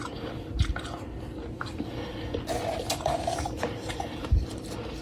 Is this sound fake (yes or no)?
no